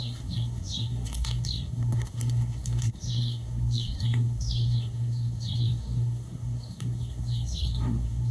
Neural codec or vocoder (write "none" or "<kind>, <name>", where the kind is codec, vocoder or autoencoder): codec, SNAC